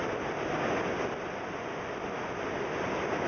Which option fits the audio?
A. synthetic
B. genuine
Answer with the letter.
B